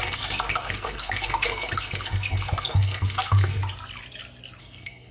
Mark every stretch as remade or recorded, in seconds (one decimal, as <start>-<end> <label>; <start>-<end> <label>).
0.0-3.6 remade; 3.6-4.6 recorded; 4.6-5.1 remade